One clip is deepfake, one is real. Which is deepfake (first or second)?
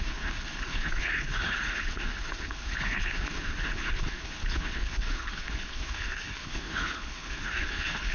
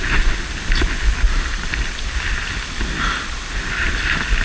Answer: first